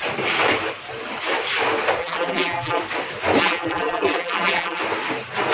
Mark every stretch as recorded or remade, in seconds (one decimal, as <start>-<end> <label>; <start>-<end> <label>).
0.0-2.0 recorded; 2.0-2.8 remade; 2.8-3.4 recorded; 3.4-4.8 remade; 4.8-5.5 recorded